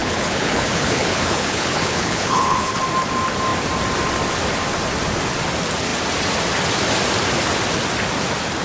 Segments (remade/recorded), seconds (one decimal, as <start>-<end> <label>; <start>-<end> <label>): 0.0-2.8 remade; 2.8-8.6 recorded